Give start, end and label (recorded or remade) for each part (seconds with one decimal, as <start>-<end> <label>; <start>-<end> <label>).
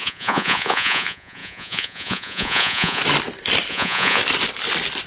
0.0-3.0 remade; 3.0-3.7 recorded; 3.7-4.2 remade; 4.2-5.1 recorded